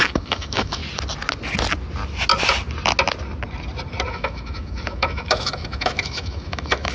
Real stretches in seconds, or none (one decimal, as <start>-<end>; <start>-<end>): 0.8-4.1